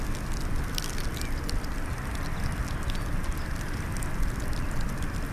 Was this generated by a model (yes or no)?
no